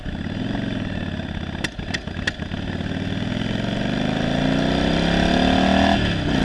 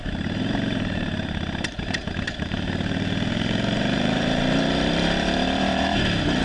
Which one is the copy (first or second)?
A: second